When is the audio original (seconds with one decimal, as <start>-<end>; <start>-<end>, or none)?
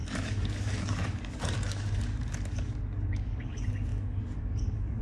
none